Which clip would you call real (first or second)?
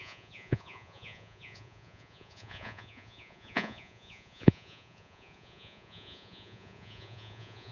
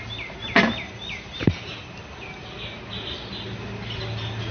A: second